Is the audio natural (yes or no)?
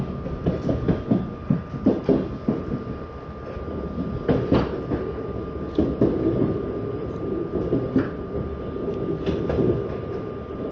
yes